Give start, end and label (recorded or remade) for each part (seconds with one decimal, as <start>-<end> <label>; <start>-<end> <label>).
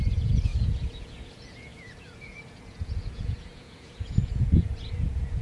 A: 0.0-5.4 remade